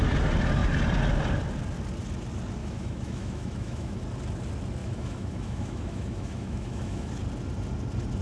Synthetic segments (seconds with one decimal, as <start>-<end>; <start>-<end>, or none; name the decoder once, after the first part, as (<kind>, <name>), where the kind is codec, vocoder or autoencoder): 2.6-4.0 (autoencoder, DAC-VAE); 4.8-7.1